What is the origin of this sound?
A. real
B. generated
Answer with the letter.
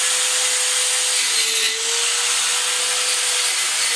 A